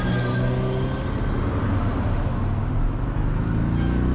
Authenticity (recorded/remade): recorded